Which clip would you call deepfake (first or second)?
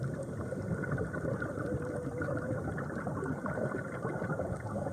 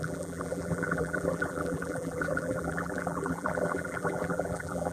second